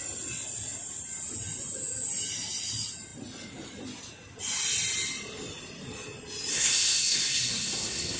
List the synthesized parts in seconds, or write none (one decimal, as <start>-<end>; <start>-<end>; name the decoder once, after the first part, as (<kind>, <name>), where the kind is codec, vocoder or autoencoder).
6.5-8.2 (codec, SNAC)